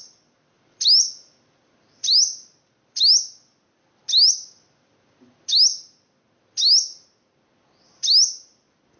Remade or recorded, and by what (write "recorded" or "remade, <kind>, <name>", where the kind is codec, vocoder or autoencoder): recorded